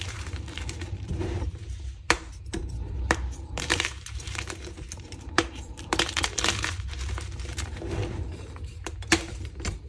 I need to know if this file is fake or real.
fake